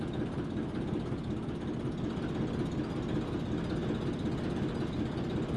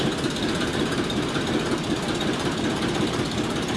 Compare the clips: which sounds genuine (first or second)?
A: first